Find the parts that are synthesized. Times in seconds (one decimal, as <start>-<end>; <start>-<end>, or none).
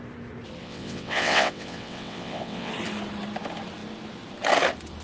0.6-2.7